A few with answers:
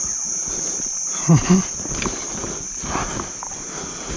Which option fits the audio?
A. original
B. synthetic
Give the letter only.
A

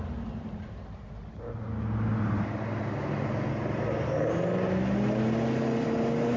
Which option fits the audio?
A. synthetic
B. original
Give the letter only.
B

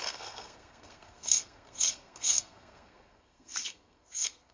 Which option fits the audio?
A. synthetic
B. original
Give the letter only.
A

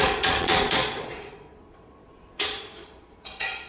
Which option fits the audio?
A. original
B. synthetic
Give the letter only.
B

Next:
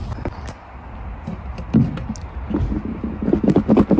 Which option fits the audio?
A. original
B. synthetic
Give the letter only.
A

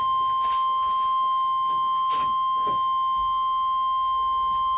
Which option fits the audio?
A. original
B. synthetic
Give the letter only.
A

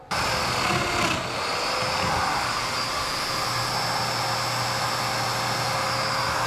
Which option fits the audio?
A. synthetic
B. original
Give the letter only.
B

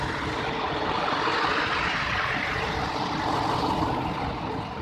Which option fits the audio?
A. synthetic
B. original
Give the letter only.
B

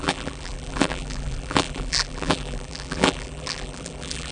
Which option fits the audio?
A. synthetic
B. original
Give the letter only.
A